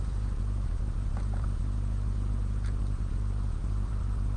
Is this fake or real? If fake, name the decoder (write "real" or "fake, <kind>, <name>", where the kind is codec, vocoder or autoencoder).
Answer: real